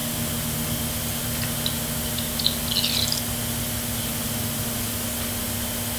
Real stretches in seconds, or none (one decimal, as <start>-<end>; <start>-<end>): 0.0-6.0